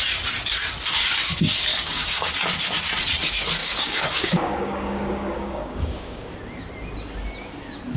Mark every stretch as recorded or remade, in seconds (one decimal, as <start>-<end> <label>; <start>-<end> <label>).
0.0-1.7 recorded; 1.7-2.3 remade; 2.3-3.6 recorded; 3.6-6.2 remade; 6.2-8.0 recorded